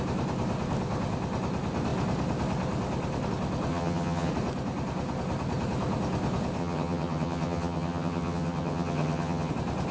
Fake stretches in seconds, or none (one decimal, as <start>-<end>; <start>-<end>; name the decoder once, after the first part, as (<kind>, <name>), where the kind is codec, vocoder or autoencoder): 3.7-4.3 (vocoder, HiFi-GAN); 6.6-9.5